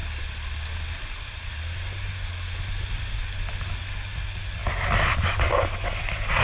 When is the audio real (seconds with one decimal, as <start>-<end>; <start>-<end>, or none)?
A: 0.0-6.4